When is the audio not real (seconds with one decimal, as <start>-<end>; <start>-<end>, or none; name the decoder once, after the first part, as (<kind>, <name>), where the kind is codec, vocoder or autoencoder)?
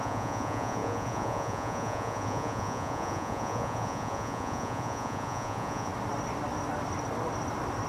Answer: 0.0-5.9 (vocoder, Vocos)